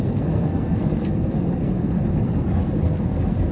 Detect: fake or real fake